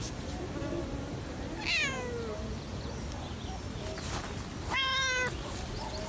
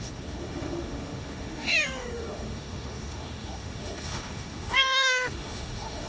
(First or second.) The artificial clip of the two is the second